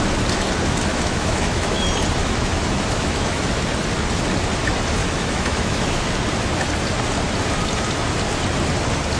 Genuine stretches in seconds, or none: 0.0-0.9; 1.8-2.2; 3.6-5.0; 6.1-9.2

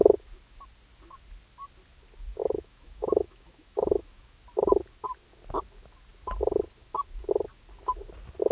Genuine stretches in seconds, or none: 0.0-2.4; 4.2-8.5

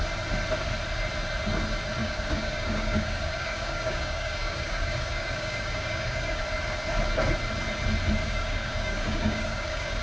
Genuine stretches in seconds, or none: 0.0-2.0; 6.4-8.2

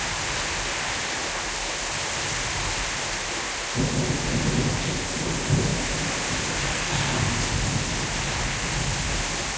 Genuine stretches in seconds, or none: 0.0-6.7; 7.2-9.6